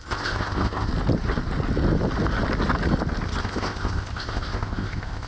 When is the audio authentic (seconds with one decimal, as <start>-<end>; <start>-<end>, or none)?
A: 0.9-3.4